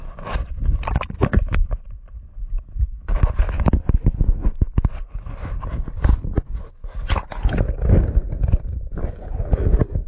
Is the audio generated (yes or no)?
no